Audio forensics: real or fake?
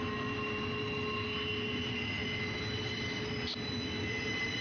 real